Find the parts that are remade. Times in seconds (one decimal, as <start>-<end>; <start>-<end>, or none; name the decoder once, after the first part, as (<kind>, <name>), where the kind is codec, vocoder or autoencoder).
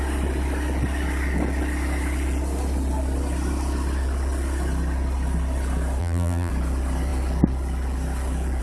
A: 6.0-6.5 (vocoder, BigVGAN v2)